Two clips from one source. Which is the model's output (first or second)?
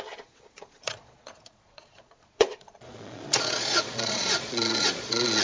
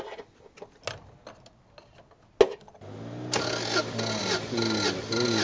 first